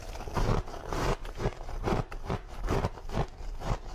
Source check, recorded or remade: recorded